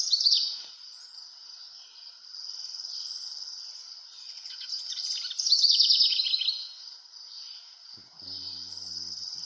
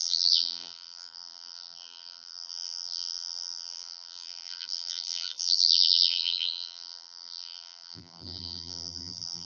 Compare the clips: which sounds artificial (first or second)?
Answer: second